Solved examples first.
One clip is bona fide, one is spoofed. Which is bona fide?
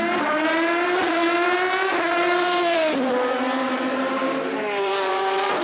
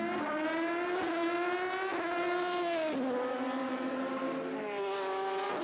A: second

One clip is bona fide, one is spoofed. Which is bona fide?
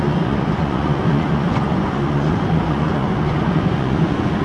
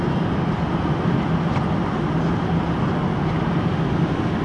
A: second